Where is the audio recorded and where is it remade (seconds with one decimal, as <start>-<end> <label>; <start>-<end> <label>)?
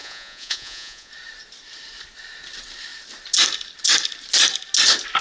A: 0.0-1.1 remade; 1.1-5.2 recorded